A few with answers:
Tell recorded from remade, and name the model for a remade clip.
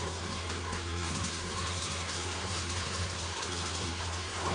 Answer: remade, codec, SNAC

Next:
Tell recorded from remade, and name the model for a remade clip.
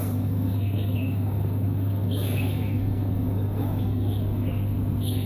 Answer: remade, codec, SNAC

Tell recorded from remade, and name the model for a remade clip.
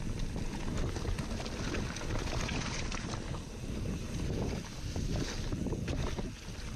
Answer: recorded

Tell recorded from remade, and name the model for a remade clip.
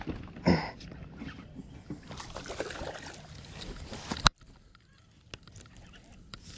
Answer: recorded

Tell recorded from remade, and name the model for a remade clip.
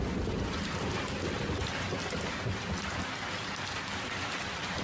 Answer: recorded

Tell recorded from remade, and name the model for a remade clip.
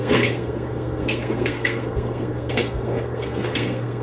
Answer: remade, codec, SNAC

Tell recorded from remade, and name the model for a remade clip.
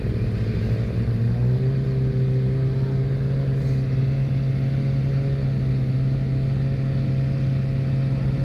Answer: recorded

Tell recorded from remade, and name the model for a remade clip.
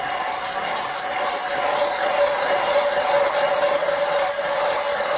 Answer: recorded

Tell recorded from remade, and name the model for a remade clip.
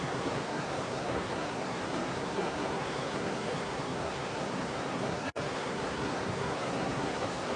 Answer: remade, codec, SNAC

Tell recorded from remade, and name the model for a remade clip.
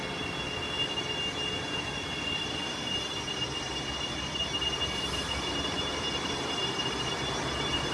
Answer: recorded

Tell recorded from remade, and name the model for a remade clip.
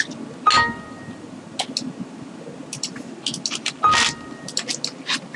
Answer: recorded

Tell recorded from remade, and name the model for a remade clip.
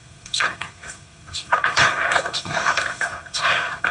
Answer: remade, codec, SNAC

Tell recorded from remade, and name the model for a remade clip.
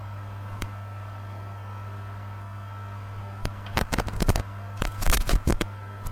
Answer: remade, codec, SNAC